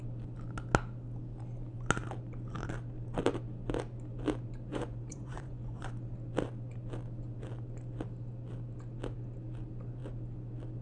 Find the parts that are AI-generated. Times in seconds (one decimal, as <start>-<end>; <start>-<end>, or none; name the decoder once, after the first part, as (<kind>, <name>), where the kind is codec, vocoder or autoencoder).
4.7-5.9 (vocoder, Vocos)